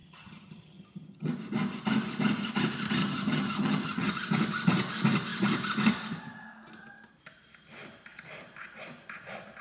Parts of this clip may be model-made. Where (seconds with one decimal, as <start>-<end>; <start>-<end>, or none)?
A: 0.0-1.3; 3.0-4.1